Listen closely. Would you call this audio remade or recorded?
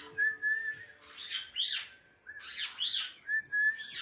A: recorded